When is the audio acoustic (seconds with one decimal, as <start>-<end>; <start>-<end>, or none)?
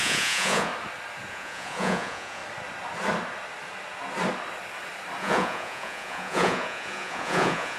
0.7-1.3; 2.4-5.2